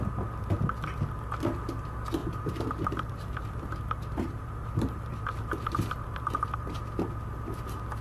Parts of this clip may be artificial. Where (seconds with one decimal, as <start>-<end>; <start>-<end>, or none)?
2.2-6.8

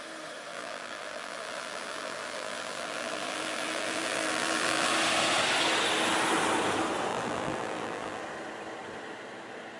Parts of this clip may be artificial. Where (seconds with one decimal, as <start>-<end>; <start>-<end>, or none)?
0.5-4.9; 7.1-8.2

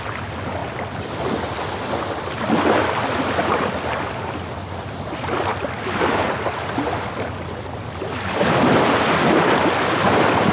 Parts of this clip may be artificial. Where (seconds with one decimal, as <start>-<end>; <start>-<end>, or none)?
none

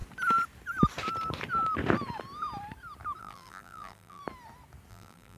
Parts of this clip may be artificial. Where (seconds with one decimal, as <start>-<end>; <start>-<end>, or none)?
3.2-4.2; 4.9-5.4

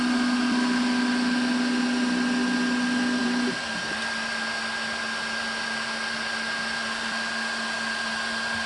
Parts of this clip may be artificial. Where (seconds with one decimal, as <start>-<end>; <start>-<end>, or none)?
3.2-4.0

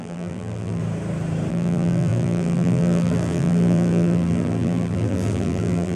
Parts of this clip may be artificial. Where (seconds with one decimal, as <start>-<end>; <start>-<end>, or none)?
0.0-0.8; 1.5-6.0